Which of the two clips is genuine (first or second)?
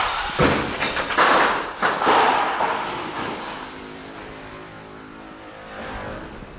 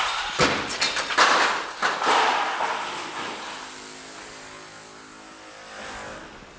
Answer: second